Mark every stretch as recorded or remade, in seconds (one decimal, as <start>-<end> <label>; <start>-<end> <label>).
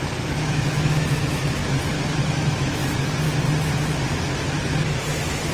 0.0-1.6 remade; 1.6-2.3 recorded; 2.3-2.8 remade; 2.8-5.5 recorded